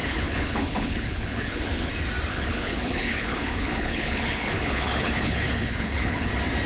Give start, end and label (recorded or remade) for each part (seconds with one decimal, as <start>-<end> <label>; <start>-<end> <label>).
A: 0.0-1.9 remade; 1.9-2.3 recorded; 2.3-6.3 remade; 6.3-6.7 recorded